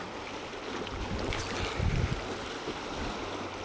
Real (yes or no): yes